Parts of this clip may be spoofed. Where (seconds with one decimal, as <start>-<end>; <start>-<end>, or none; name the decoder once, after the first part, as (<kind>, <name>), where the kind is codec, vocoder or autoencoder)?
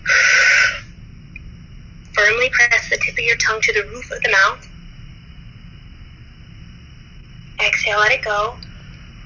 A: none